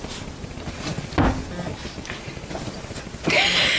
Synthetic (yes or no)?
no